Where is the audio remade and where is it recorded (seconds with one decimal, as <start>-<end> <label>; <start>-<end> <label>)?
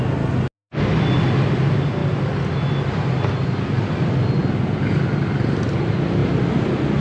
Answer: 0.0-7.0 recorded